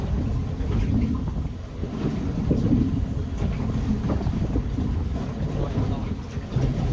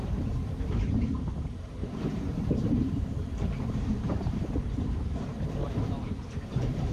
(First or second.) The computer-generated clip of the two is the second